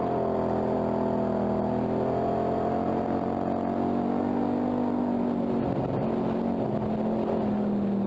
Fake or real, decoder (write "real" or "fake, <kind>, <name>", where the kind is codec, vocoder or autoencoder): real